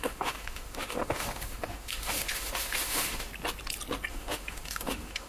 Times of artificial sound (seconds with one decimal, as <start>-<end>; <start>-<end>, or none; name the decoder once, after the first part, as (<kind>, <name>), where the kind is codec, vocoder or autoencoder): 0.0-3.3 (autoencoder, DAC-VAE); 4.1-5.3